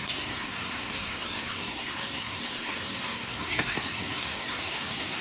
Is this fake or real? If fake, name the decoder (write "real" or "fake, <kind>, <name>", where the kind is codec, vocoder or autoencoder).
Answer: fake, codec, SNAC